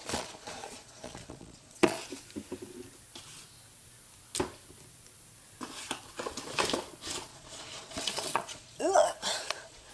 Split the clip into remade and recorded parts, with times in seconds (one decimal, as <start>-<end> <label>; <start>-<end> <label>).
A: 0.0-2.0 remade; 2.0-7.3 recorded; 7.3-9.9 remade